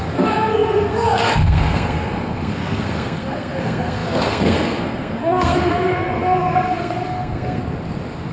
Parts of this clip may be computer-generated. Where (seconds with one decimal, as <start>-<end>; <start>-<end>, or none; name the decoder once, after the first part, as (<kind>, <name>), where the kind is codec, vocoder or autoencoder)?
0.0-7.6 (codec, SNAC)